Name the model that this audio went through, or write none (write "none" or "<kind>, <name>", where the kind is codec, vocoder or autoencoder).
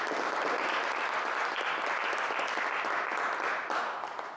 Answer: none